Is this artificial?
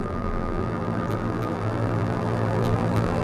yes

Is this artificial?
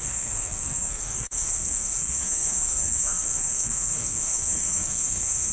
yes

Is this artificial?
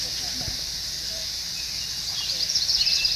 no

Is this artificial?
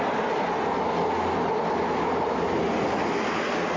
no